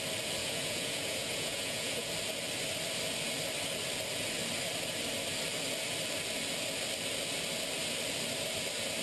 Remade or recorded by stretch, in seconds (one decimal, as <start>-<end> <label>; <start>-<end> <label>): 0.0-0.4 recorded; 0.4-2.1 remade; 2.1-9.0 recorded